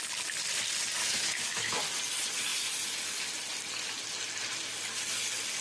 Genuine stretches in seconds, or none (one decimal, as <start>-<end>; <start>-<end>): 0.0-1.0; 1.8-5.6